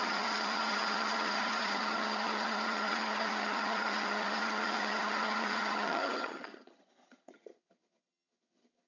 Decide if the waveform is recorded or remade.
remade